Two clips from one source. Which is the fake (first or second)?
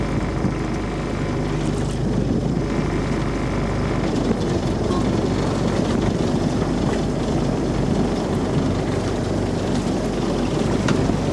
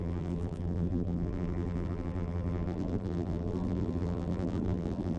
second